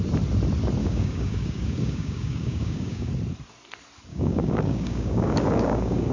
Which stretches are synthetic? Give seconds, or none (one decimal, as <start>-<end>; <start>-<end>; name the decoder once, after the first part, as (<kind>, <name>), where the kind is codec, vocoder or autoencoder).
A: 0.8-3.1 (codec, DAC); 4.1-6.1